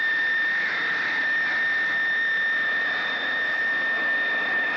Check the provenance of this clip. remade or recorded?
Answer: remade